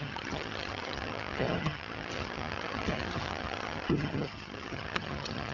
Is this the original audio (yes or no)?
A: no